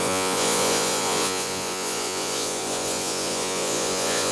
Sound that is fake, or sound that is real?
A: fake